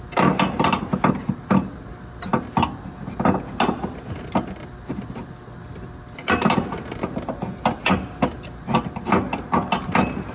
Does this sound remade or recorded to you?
recorded